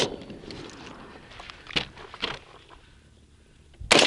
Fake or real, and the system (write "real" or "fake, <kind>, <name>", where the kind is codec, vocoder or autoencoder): real